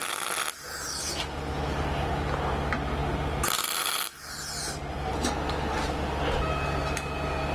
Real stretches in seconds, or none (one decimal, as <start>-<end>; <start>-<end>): 0.0-7.5